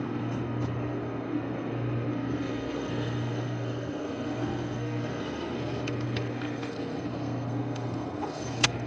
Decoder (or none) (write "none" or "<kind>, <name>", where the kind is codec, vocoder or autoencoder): codec, SNAC